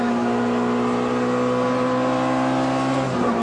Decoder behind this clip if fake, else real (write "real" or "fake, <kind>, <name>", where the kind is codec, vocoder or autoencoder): real